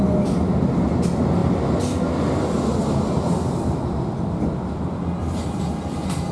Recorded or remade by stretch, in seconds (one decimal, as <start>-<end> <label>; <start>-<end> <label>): 0.0-6.3 recorded